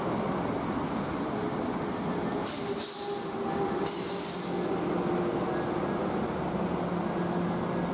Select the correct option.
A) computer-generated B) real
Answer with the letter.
B